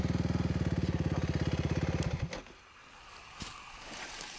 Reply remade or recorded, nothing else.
recorded